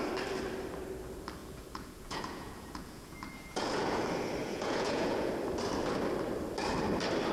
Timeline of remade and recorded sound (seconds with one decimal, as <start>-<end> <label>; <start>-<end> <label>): 0.0-1.4 recorded; 1.4-4.0 remade; 4.0-4.4 recorded; 4.4-5.3 remade; 5.3-7.3 recorded